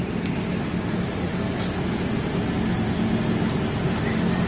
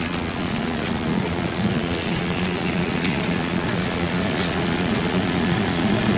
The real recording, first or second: first